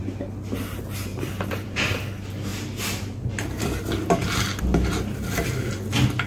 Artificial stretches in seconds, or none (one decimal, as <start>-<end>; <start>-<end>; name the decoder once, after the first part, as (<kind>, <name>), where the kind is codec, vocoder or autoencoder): 1.1-2.1 (vocoder, BigVGAN v2)